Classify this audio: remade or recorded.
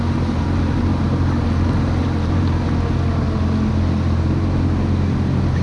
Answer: recorded